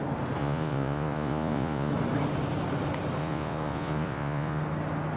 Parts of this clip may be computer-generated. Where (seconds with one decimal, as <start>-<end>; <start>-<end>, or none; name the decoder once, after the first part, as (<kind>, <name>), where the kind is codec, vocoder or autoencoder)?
0.4-1.9 (vocoder, Vocos); 3.2-4.6